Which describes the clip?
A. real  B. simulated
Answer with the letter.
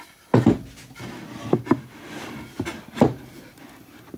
A